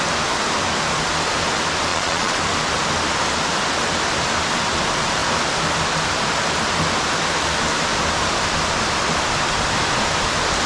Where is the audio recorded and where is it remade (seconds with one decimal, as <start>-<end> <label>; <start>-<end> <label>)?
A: 0.0-1.9 recorded; 1.9-2.4 remade; 2.4-10.7 recorded